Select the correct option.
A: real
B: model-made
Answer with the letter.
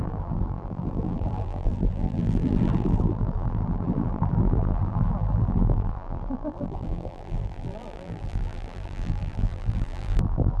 B